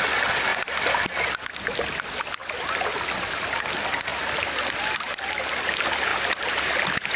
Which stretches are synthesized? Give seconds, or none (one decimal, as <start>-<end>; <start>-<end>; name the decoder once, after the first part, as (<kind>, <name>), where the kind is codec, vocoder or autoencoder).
2.4-3.6 (vocoder, BigVGAN v2); 6.1-7.2